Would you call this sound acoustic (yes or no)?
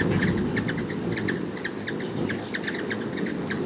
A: yes